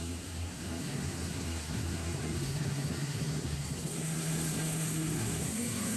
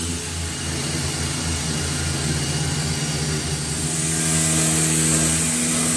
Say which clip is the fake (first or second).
first